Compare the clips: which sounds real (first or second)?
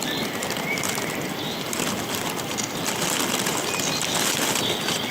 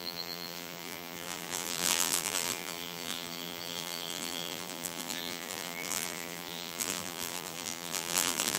first